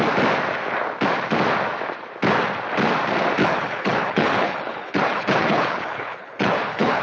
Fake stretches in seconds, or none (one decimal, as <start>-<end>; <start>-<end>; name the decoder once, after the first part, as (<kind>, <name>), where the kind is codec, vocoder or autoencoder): 3.4-7.0 (codec, HILCodec)